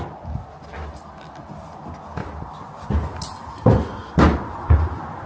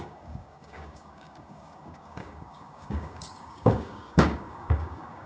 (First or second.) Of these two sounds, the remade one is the second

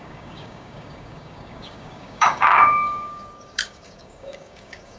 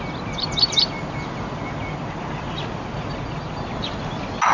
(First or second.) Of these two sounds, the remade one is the first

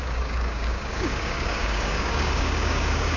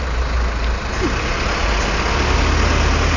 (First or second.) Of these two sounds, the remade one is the first